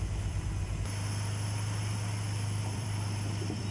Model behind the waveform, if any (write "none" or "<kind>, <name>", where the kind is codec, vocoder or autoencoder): vocoder, BigVGAN v2